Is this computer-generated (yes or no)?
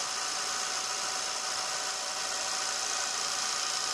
no